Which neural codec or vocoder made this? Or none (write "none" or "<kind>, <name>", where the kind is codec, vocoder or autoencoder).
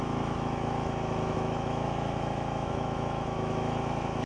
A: autoencoder, DAC-VAE